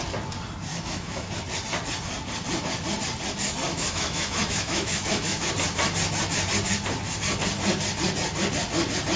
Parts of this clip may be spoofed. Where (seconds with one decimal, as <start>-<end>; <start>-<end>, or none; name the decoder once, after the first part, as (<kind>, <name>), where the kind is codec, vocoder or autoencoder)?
0.7-1.3 (autoencoder, DAC-VAE); 3.7-5.5